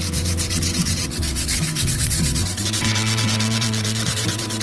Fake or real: fake